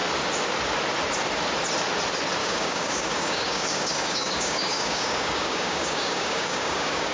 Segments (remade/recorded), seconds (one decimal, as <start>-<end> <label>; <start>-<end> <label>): 0.0-2.4 recorded; 2.4-7.1 remade